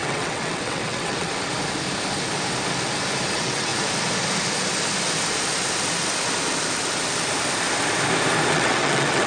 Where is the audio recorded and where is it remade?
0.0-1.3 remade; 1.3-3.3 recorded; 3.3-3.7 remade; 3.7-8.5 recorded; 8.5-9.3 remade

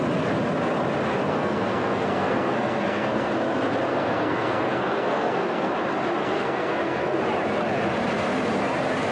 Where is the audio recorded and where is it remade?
0.0-1.1 recorded; 1.1-3.3 remade; 3.3-3.9 recorded; 3.9-5.7 remade; 5.7-6.2 recorded; 6.2-7.2 remade; 7.2-9.1 recorded

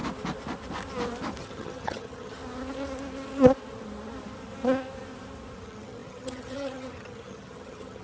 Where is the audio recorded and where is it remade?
0.0-1.4 recorded; 1.4-2.4 remade; 2.4-5.6 recorded; 5.6-8.0 remade